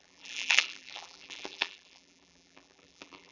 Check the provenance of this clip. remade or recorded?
remade